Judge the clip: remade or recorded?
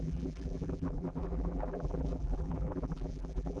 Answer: remade